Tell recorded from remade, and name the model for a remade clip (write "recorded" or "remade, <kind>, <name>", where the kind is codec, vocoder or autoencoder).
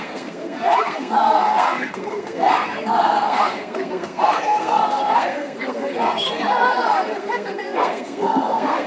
remade, codec, SNAC